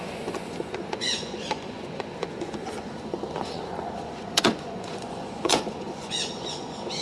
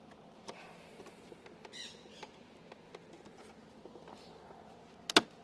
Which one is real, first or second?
second